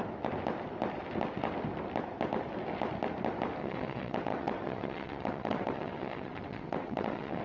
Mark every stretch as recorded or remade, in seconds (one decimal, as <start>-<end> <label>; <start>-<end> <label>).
0.0-3.6 recorded; 3.6-7.4 remade